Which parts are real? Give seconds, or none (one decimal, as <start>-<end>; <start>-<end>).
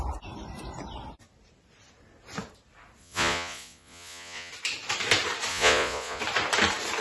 0.0-3.0; 4.5-5.5; 6.2-7.0